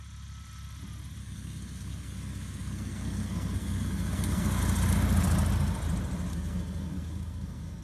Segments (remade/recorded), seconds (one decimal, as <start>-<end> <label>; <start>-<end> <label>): 0.0-1.2 recorded; 1.2-4.6 remade; 4.6-6.3 recorded; 6.3-7.8 remade